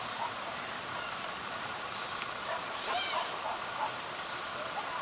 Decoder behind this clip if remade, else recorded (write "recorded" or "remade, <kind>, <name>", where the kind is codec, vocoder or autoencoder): remade, vocoder, BigVGAN v2